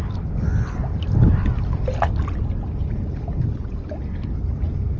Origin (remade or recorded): recorded